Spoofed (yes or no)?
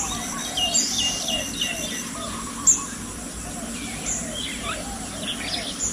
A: no